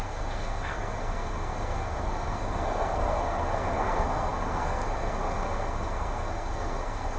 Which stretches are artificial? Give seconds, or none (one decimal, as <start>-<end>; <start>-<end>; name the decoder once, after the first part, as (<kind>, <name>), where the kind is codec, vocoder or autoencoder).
0.0-7.2 (codec, SNAC)